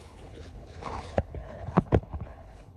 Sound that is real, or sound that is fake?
fake